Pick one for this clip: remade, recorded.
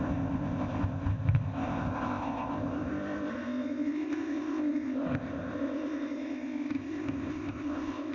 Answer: remade